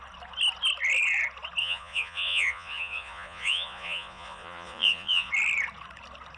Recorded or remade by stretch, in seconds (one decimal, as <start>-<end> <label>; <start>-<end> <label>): 0.0-1.6 recorded; 1.6-5.3 remade; 5.3-6.4 recorded